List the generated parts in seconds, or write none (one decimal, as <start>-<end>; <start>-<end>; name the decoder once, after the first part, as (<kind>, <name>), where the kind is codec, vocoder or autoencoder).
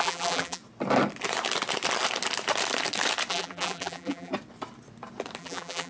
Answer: 0.0-0.6 (vocoder, BigVGAN v2); 3.3-4.3; 5.4-5.9